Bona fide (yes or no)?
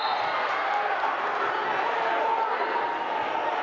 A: yes